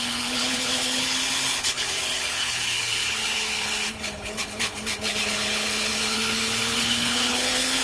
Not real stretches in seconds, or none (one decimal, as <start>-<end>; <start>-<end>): 0.0-7.8